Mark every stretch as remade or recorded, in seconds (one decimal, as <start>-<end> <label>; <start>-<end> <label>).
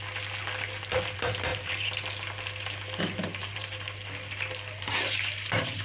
0.0-3.4 recorded; 3.4-5.8 remade